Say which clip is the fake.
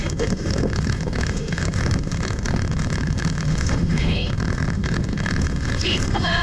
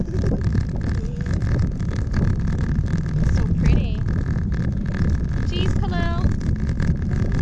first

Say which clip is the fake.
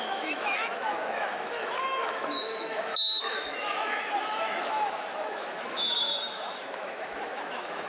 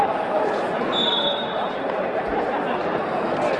first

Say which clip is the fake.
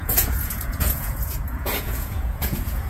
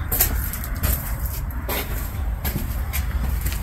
first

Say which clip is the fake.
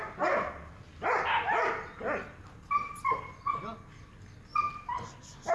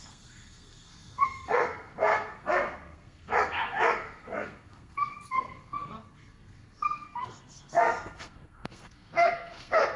second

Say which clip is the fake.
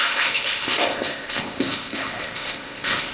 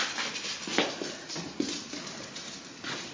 first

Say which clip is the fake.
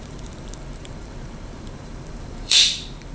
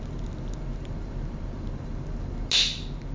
first